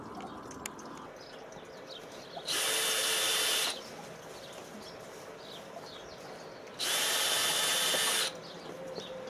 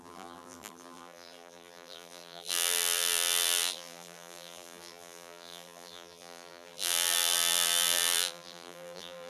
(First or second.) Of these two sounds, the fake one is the second